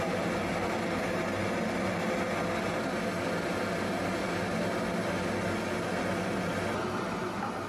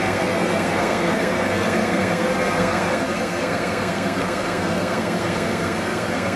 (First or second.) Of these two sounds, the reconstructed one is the second